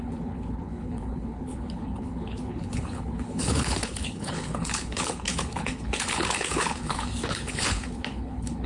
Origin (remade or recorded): remade